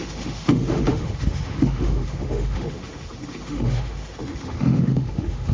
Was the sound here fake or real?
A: fake